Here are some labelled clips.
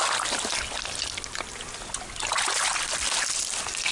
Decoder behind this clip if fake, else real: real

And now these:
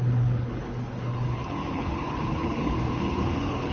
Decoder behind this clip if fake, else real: fake, codec, HILCodec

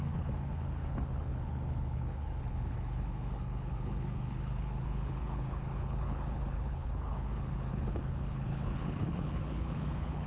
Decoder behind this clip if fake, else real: fake, codec, HILCodec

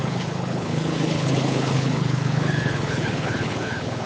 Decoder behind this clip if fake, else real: fake, codec, HILCodec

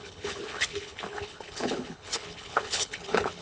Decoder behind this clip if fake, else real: fake, codec, HILCodec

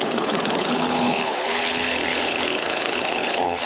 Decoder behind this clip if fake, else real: fake, codec, HILCodec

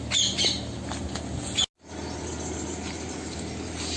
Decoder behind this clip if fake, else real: real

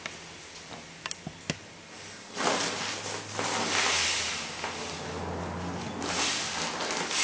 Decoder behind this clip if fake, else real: real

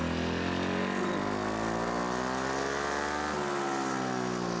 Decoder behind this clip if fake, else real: real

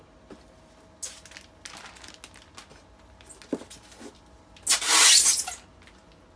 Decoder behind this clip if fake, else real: real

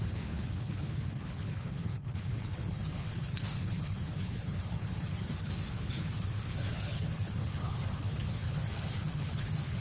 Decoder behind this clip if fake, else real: fake, codec, HILCodec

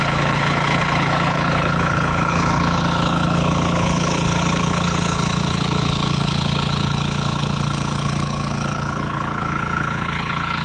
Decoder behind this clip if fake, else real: fake, codec, HILCodec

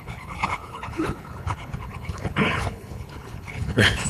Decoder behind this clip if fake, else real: fake, codec, HILCodec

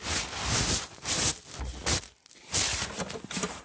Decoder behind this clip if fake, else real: real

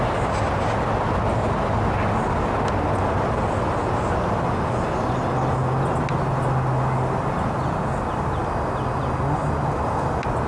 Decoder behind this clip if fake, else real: real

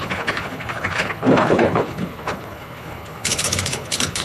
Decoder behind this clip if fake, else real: fake, codec, HILCodec